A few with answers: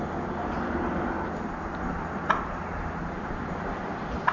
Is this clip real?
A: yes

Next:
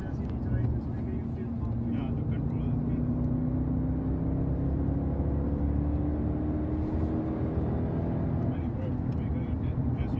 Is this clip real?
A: yes